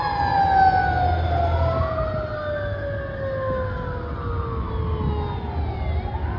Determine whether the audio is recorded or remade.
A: recorded